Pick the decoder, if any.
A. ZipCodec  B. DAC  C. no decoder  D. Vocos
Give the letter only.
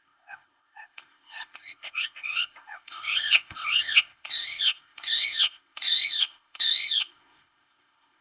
A